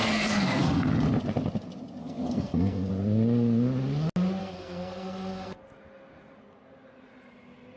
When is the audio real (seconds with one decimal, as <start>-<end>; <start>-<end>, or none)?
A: 0.9-2.0; 2.9-4.4; 5.6-7.8